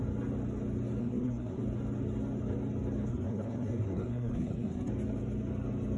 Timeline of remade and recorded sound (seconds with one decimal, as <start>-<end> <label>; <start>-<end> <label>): 0.0-1.0 recorded; 1.0-1.6 remade; 1.6-3.1 recorded; 3.1-4.9 remade; 4.9-6.0 recorded